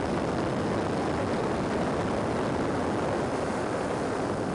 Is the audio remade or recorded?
recorded